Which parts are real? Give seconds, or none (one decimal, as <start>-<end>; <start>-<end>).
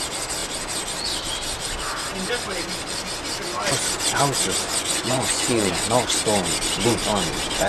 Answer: 0.0-4.7; 5.7-7.7